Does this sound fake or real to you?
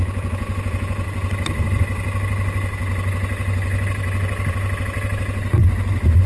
real